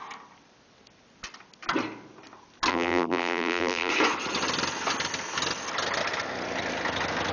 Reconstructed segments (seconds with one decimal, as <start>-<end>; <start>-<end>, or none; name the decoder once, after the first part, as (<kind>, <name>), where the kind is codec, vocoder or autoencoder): 2.7-3.9 (vocoder, BigVGAN v2)

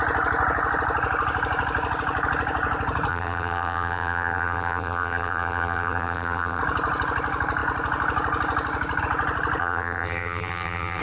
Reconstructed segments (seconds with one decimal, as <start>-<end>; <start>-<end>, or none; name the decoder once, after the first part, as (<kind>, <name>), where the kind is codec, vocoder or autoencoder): 3.1-6.6 (vocoder, BigVGAN v2); 9.6-11.0

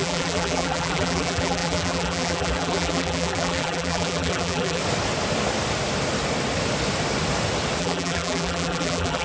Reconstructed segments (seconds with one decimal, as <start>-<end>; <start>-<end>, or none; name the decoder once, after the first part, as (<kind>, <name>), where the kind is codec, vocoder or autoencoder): 0.0-4.8 (vocoder, BigVGAN v2); 7.8-9.2

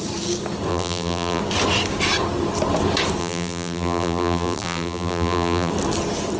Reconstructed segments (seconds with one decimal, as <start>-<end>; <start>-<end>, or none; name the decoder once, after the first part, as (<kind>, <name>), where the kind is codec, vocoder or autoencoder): 0.7-1.4 (vocoder, BigVGAN v2); 3.2-5.7